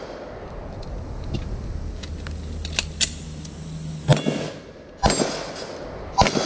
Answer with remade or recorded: recorded